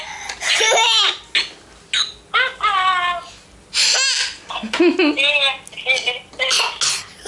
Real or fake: real